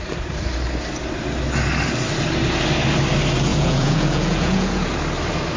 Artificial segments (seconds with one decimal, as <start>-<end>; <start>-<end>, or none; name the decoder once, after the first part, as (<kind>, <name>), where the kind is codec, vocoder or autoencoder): 3.5-4.9 (vocoder, Vocos)